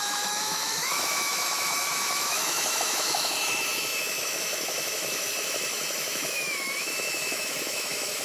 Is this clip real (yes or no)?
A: no